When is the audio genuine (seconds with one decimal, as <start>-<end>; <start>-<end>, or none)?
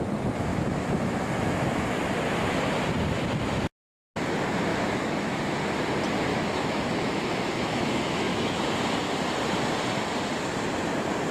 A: 0.0-0.5; 1.9-4.7; 5.5-6.3; 8.6-11.3